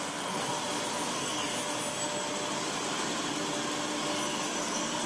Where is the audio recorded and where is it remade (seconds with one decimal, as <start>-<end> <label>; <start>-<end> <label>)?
0.0-0.5 remade; 0.5-1.1 recorded; 1.1-1.5 remade; 1.5-4.6 recorded; 4.6-5.1 remade